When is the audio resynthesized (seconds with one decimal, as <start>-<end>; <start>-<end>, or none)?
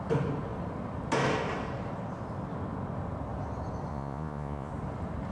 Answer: 3.9-4.7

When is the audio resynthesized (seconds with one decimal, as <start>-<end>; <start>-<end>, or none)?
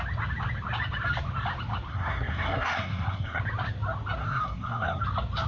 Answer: 1.9-3.4; 4.2-5.0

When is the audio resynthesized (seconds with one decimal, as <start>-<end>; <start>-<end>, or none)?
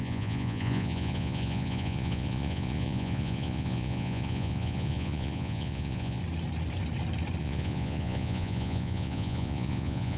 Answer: 0.0-6.2; 7.4-10.2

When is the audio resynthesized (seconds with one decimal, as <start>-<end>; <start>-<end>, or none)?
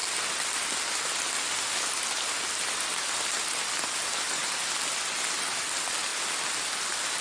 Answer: none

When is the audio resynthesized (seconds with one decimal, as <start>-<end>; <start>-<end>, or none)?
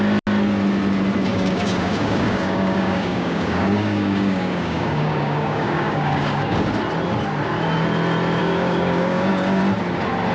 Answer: 1.3-6.6; 8.4-9.6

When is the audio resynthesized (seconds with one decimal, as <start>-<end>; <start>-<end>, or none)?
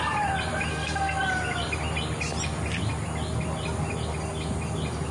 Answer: 0.7-1.3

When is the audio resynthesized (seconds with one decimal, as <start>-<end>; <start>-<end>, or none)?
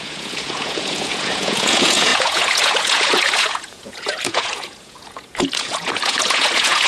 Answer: 0.0-6.9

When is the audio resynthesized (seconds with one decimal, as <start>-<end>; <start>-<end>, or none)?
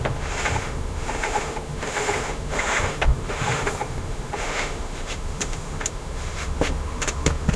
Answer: 0.0-7.6